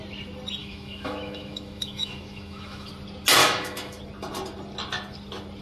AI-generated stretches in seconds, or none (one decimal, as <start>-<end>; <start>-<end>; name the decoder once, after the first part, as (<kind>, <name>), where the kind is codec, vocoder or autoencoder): 0.6-2.9 (autoencoder, DAC-VAE); 3.4-4.0